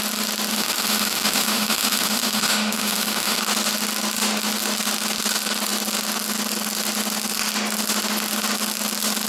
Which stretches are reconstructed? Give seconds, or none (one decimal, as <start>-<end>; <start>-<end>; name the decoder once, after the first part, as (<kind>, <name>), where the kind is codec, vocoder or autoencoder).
0.5-3.4 (autoencoder, DAC-VAE)